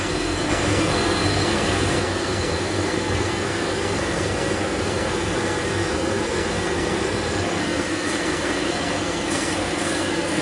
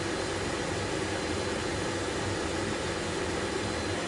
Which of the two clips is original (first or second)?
second